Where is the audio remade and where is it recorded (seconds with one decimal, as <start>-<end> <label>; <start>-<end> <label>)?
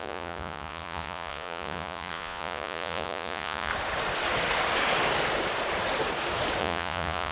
0.0-3.7 remade; 3.7-6.6 recorded; 6.6-7.3 remade